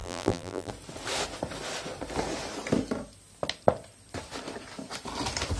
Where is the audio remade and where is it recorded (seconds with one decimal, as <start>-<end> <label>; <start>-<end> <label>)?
0.0-0.7 remade; 0.7-5.6 recorded